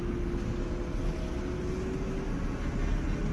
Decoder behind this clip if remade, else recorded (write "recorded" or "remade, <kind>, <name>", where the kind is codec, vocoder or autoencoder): recorded